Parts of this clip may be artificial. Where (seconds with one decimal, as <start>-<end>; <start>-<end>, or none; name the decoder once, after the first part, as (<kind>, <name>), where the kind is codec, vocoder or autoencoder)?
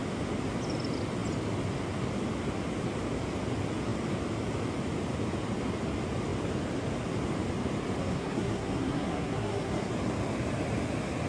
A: 8.0-9.9 (codec, SNAC)